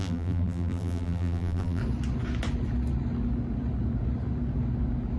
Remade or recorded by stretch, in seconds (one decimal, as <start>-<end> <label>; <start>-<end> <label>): 0.0-1.8 remade; 1.8-5.2 recorded